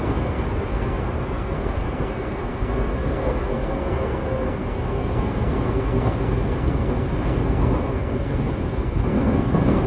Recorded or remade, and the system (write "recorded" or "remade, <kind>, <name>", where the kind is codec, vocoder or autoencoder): remade, codec, SNAC